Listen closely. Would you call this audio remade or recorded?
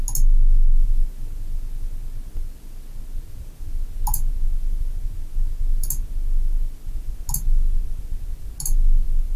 recorded